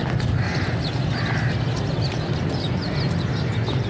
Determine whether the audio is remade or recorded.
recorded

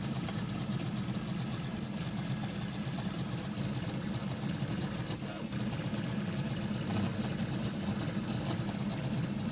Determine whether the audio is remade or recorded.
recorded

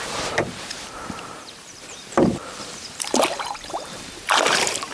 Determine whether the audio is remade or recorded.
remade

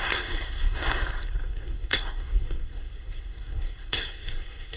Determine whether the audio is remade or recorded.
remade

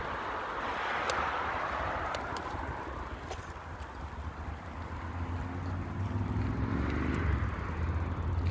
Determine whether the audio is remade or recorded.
recorded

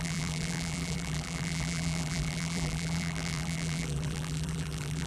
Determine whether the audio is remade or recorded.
remade